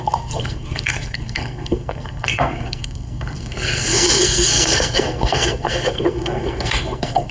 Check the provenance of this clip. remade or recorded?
remade